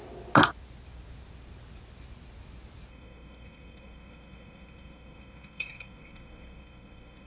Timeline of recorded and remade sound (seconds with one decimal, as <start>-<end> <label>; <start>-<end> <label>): 0.0-2.9 recorded; 2.9-7.3 remade